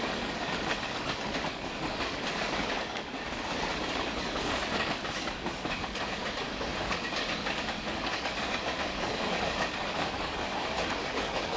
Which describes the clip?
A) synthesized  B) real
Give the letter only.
A